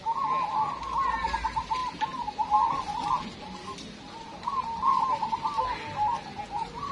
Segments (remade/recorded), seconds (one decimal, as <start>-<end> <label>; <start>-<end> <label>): 0.0-6.9 recorded